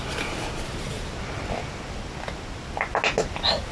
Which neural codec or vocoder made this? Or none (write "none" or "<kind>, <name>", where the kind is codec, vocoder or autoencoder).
none